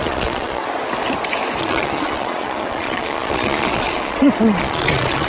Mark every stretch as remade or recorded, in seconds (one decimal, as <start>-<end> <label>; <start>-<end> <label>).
0.0-0.6 remade; 0.6-1.6 recorded; 1.6-5.3 remade